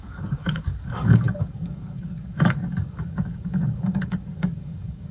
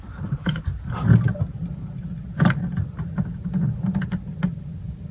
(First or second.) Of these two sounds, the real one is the second